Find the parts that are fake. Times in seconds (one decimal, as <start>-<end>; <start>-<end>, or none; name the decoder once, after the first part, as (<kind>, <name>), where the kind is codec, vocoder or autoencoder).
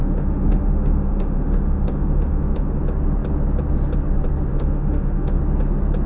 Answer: 0.0-2.8 (autoencoder, DAC-VAE); 4.5-5.4